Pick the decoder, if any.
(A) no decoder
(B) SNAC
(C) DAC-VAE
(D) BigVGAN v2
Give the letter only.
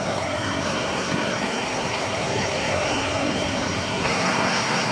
B